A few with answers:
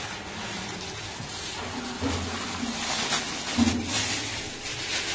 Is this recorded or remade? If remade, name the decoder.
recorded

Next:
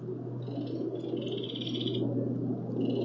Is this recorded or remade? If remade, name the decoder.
recorded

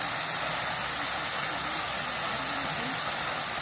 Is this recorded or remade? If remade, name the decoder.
recorded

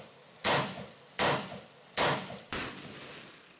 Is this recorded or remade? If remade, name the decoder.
recorded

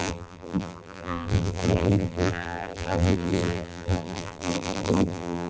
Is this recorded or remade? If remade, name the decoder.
remade, vocoder, BigVGAN v2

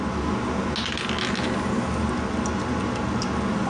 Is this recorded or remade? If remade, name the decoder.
recorded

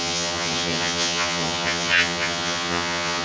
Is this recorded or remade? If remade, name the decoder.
remade, vocoder, HiFi-GAN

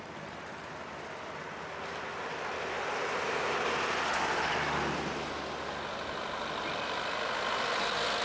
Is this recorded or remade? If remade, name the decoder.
recorded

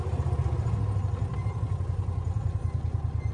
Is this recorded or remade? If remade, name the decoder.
recorded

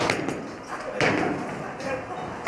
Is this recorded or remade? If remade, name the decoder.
recorded